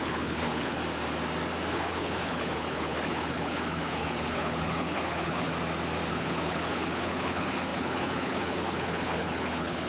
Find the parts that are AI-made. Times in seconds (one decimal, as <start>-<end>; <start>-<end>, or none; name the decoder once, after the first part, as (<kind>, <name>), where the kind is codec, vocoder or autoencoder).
0.0-0.8 (codec, HILCodec); 1.7-5.5; 6.1-9.9